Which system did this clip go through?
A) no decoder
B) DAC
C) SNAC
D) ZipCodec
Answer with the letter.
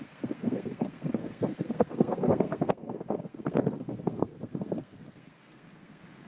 C